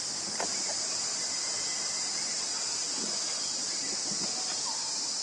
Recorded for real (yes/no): yes